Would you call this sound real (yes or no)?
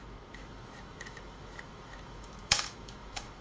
no